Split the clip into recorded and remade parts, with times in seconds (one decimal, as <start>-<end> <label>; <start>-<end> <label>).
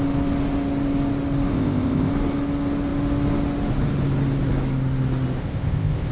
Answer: 0.0-1.5 recorded; 1.5-2.1 remade; 2.1-5.4 recorded; 5.4-6.1 remade